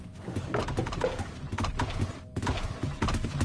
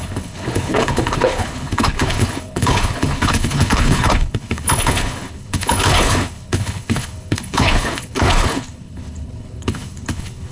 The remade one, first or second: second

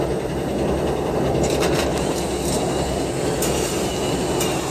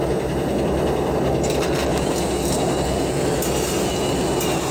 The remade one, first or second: first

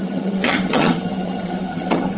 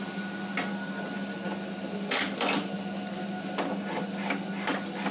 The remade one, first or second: first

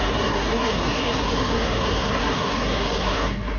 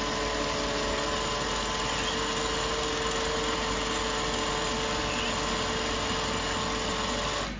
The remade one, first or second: first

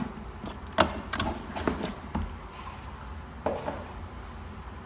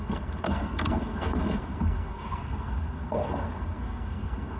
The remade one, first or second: second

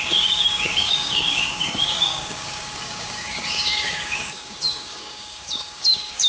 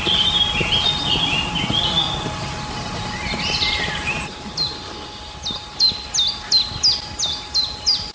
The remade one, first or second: first